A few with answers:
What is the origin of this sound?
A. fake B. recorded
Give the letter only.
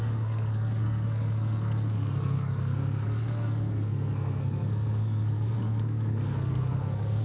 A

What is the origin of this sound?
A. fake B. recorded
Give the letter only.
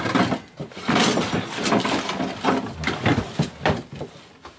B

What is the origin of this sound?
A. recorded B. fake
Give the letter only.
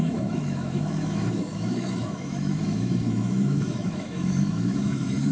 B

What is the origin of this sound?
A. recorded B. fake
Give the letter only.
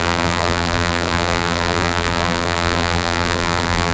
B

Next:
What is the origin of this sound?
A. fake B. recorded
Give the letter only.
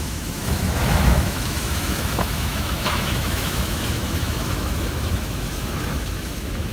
A